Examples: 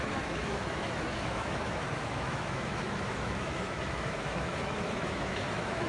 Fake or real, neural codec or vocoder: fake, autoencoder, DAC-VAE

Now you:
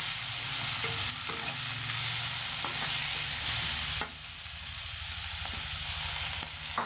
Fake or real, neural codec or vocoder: real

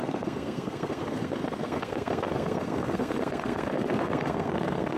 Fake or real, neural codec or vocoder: fake, codec, SNAC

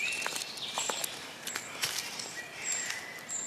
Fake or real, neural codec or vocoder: real